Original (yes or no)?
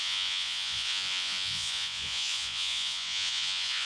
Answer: no